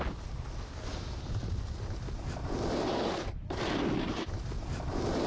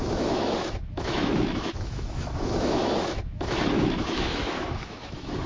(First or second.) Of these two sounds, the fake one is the second